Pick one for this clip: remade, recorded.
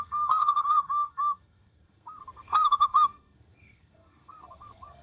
remade